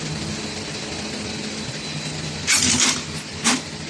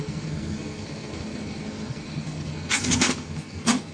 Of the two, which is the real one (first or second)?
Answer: first